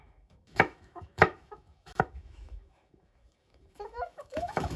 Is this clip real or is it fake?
fake